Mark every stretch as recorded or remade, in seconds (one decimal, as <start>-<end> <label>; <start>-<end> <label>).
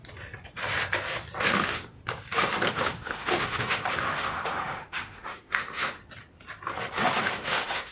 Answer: 0.0-1.4 recorded; 1.4-2.0 remade; 2.0-2.7 recorded; 2.7-6.0 remade; 6.0-7.2 recorded; 7.2-7.9 remade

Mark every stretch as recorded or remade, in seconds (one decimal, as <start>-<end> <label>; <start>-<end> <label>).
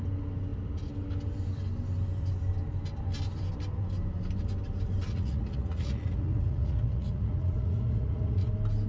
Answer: 0.0-5.1 recorded; 5.1-8.5 remade; 8.5-8.9 recorded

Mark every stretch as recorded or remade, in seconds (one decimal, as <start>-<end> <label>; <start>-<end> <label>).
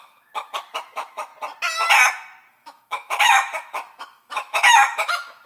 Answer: 0.0-1.3 remade; 1.3-2.5 recorded; 2.5-5.5 remade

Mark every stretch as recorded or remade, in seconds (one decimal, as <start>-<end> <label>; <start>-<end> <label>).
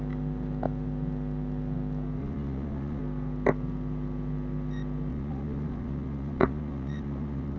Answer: 0.0-2.2 recorded; 2.2-3.0 remade; 3.0-5.1 recorded; 5.1-7.6 remade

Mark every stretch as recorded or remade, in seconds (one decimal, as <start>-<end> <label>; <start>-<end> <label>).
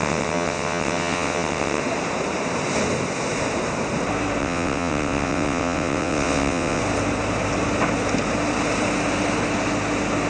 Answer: 0.0-1.8 remade; 1.8-4.4 recorded; 4.4-6.8 remade; 6.8-10.3 recorded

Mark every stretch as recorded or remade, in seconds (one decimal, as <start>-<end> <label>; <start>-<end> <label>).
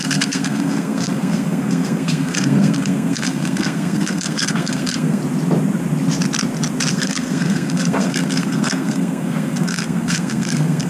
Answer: 0.0-5.2 remade; 5.2-6.9 recorded; 6.9-10.9 remade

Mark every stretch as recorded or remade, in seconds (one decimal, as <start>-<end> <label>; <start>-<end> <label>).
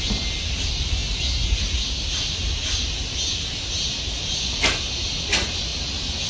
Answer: 0.0-6.3 recorded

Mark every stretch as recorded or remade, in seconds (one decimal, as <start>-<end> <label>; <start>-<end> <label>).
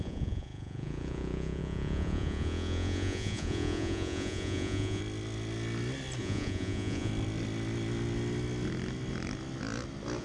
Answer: 0.0-5.0 remade; 5.0-6.2 recorded; 6.2-7.1 remade; 7.1-10.2 recorded